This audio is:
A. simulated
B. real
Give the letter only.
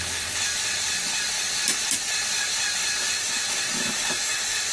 B